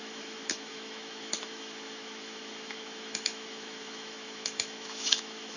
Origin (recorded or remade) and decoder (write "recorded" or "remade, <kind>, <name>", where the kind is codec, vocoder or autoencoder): remade, autoencoder, DAC-VAE